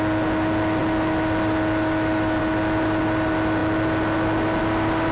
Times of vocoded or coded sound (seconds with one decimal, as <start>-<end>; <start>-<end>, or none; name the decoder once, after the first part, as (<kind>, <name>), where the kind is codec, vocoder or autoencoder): none